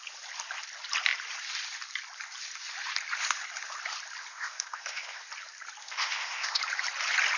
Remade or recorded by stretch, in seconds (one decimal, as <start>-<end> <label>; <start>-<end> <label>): 0.0-4.3 recorded; 4.3-5.2 remade; 5.2-5.8 recorded; 5.8-6.6 remade; 6.6-7.4 recorded